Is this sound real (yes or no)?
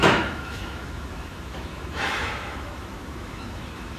no